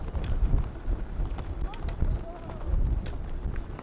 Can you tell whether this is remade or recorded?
recorded